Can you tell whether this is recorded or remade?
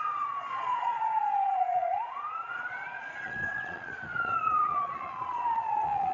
remade